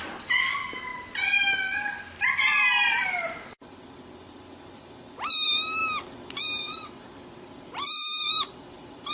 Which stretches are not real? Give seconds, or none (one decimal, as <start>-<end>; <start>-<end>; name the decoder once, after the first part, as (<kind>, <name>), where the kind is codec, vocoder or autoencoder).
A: 0.0-5.8 (vocoder, BigVGAN v2); 6.4-9.1